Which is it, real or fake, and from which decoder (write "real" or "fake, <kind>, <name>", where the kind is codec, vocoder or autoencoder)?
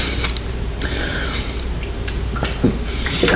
fake, vocoder, BigVGAN v2